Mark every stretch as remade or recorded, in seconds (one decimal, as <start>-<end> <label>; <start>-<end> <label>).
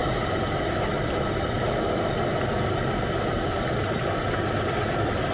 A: 0.0-5.3 recorded